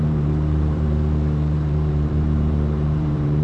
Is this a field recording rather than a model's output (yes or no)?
no